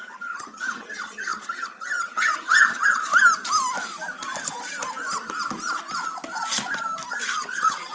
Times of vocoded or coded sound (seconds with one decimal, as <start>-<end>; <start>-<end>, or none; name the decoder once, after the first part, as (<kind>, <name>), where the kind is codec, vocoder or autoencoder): 0.0-3.1 (vocoder, HiFi-GAN); 7.1-7.9